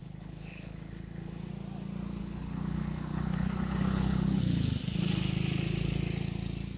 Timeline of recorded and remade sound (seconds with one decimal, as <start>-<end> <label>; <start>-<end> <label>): 0.0-1.5 remade; 1.5-2.2 recorded; 2.2-4.4 remade; 4.4-6.8 recorded